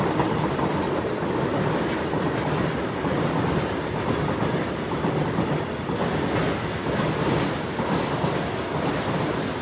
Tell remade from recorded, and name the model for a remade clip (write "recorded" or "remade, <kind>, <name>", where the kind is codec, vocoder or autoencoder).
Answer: recorded